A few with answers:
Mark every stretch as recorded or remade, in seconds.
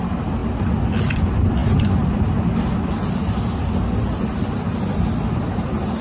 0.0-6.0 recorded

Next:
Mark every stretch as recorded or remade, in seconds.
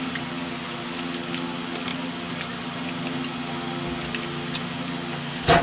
0.0-5.6 recorded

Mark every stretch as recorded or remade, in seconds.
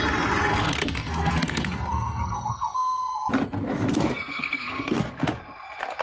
0.0-0.5 recorded; 0.5-3.3 remade; 3.3-4.3 recorded; 4.3-5.1 remade; 5.1-6.0 recorded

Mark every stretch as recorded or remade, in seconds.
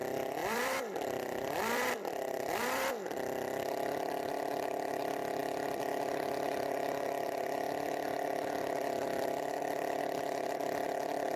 0.0-0.4 recorded; 0.4-2.9 remade; 2.9-11.4 recorded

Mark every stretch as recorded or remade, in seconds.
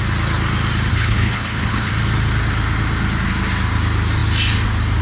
0.0-0.9 recorded; 0.9-1.9 remade; 1.9-5.0 recorded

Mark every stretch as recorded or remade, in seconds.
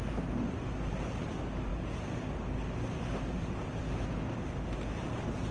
0.0-5.5 recorded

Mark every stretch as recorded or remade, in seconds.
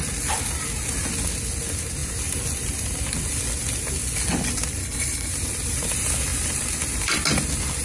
0.0-4.8 recorded; 4.8-5.3 remade; 5.3-7.8 recorded